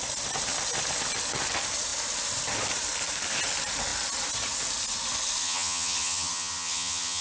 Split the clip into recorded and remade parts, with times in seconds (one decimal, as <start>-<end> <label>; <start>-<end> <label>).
0.0-5.4 recorded; 5.4-7.2 remade